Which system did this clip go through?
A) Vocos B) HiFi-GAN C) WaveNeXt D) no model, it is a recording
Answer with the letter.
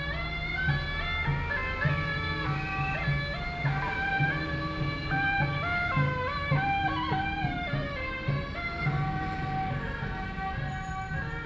D